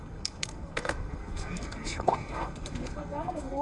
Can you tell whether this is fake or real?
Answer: fake